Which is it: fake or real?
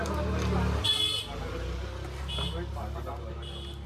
real